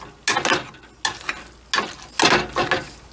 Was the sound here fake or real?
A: real